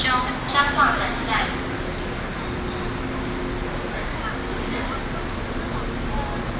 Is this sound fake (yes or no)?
no